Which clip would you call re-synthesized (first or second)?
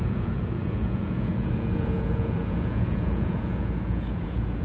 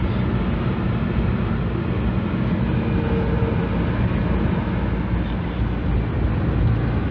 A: first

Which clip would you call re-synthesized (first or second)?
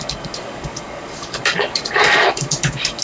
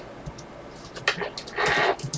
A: first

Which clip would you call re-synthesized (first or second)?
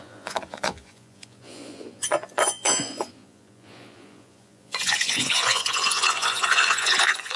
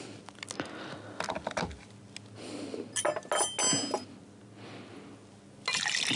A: first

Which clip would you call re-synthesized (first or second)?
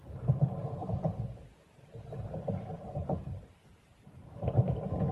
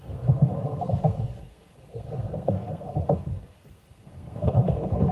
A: second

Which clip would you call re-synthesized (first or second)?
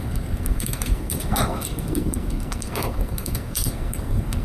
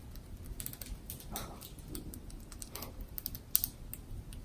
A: first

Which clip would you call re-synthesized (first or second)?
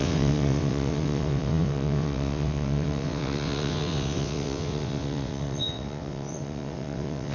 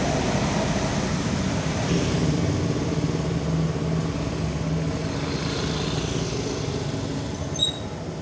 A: first